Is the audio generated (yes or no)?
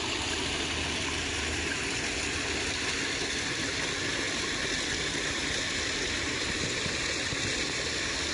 no